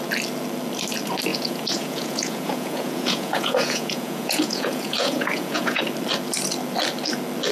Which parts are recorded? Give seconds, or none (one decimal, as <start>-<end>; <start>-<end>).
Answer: 0.0-1.3; 5.8-7.5